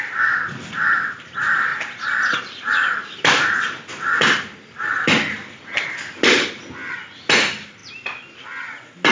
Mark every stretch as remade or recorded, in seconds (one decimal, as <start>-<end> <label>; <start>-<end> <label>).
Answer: 0.0-9.1 recorded